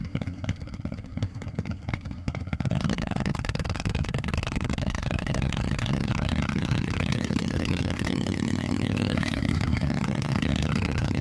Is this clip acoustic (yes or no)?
no